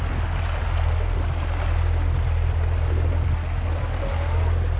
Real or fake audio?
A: real